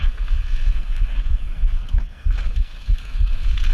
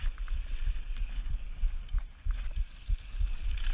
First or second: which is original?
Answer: second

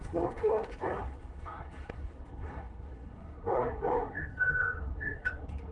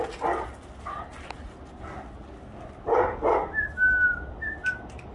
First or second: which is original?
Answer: second